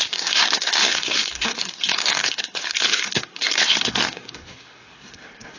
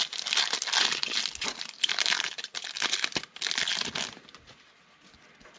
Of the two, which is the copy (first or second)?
first